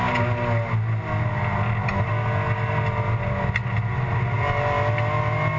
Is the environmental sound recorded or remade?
recorded